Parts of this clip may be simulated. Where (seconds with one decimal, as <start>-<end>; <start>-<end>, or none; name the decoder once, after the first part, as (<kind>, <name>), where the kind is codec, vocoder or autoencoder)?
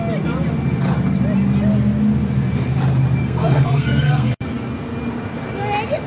3.2-4.4 (codec, SNAC)